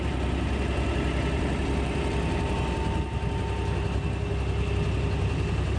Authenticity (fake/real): real